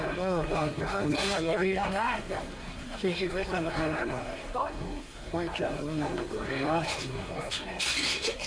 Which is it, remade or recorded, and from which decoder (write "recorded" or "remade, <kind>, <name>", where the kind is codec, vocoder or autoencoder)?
remade, codec, SNAC